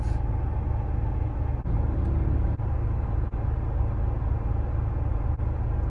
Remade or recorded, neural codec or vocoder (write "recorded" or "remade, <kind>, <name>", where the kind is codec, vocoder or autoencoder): recorded